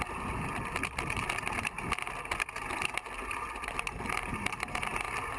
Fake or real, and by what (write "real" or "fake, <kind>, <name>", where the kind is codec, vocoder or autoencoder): real